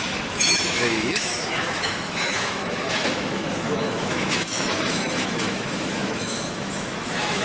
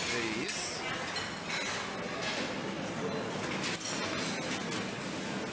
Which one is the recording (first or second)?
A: second